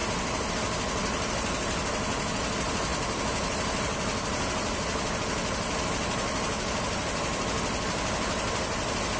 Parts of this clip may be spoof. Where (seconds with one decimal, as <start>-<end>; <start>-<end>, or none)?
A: none